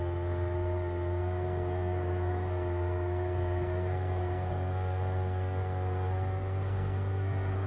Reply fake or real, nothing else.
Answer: fake